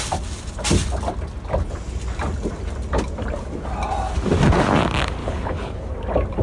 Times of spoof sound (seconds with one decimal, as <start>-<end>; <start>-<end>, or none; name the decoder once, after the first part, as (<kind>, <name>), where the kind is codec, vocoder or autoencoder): 5.2-5.9 (codec, HILCodec)